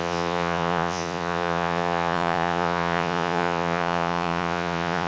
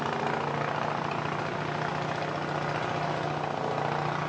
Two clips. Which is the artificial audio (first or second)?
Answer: first